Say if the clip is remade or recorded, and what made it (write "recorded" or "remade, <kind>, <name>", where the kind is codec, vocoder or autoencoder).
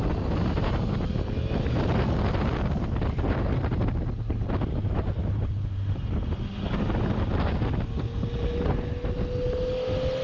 recorded